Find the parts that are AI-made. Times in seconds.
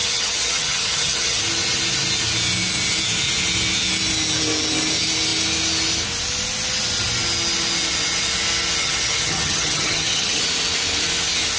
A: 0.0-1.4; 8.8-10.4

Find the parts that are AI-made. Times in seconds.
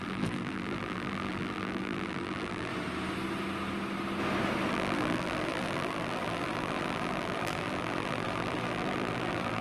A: 0.0-2.7; 4.7-9.6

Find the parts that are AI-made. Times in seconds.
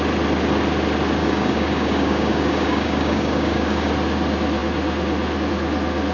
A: 1.2-3.9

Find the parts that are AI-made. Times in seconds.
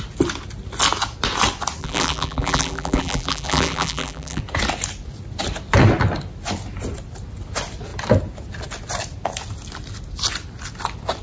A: 1.8-4.4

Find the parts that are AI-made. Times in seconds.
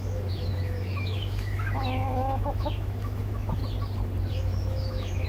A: 0.0-3.6; 4.3-5.3